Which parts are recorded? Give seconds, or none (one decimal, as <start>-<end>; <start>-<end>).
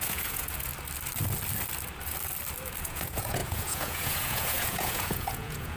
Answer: 0.7-2.8